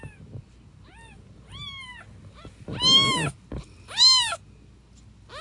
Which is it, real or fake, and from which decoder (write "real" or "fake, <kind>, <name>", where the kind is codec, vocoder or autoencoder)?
real